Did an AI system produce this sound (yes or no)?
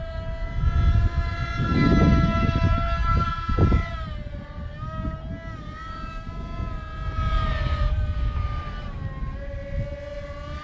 no